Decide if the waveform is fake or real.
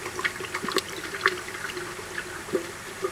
real